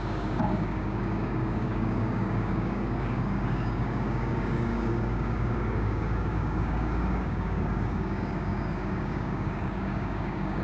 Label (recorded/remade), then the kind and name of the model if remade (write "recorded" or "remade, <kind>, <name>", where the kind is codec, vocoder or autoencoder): remade, codec, DAC